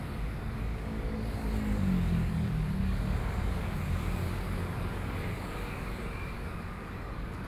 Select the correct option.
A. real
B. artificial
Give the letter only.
B